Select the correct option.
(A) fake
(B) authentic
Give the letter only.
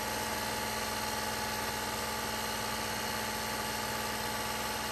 B